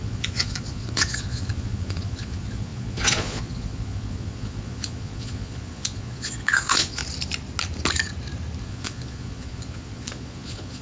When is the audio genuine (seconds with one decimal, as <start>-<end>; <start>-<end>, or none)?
7.0-8.6